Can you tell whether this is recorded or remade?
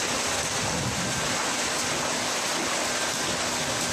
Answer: recorded